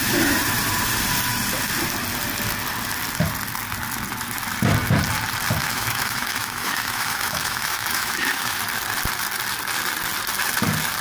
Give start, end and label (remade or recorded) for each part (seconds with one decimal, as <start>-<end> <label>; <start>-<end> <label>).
0.0-5.6 recorded; 5.6-8.6 remade; 8.6-11.0 recorded